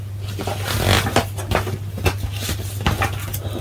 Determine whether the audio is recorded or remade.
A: recorded